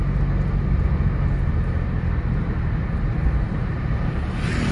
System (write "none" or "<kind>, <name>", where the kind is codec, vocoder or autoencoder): none